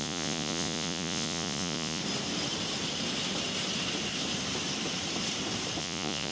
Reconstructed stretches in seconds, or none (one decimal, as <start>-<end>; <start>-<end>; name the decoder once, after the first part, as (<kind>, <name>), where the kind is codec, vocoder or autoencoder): 0.0-2.0 (vocoder, Vocos); 5.8-6.3